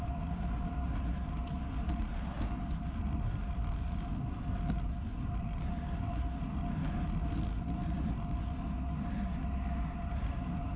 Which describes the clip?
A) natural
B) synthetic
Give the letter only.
A